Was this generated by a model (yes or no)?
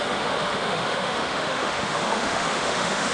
yes